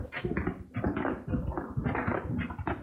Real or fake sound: real